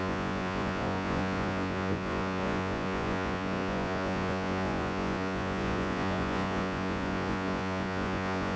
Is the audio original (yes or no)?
no